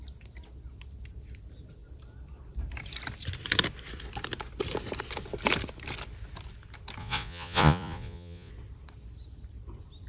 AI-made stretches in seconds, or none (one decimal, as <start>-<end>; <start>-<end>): 7.0-8.5